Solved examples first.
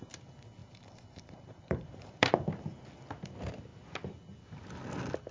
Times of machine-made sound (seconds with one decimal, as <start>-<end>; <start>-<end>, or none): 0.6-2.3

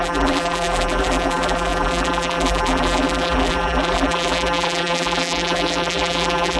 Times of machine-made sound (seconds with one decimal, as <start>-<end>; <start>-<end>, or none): 0.0-6.6

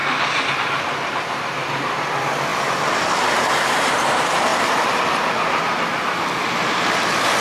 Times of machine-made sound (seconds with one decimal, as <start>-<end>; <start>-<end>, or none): none